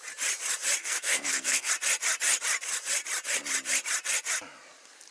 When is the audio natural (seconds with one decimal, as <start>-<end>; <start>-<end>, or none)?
0.0-0.8; 1.7-5.1